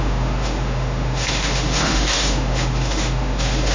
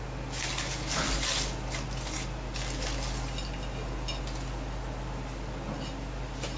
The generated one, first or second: first